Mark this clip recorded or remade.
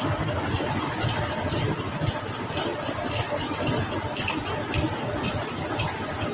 recorded